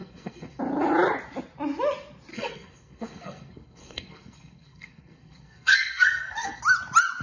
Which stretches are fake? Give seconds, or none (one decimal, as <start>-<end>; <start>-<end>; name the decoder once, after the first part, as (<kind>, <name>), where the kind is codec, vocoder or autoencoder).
0.0-0.6 (codec, SNAC); 2.3-6.6

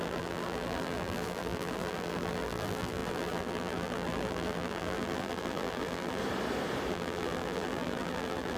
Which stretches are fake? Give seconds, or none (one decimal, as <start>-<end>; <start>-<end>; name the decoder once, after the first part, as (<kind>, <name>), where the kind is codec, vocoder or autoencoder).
0.0-6.2 (vocoder, BigVGAN v2); 6.9-8.6

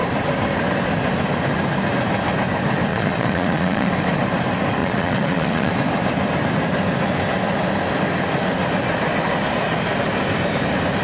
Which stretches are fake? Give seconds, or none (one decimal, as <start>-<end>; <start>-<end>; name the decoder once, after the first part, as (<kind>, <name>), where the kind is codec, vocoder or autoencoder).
2.9-3.9 (vocoder, Vocos); 4.8-5.7